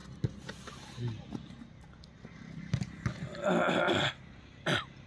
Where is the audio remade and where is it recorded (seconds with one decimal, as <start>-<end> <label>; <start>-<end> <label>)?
0.0-5.1 recorded